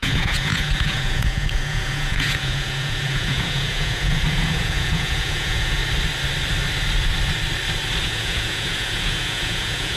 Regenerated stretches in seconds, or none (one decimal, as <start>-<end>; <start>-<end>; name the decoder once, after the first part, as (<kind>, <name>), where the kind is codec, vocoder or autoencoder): 0.0-5.8 (vocoder, Vocos); 8.0-10.0